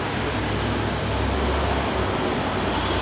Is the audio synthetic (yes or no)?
no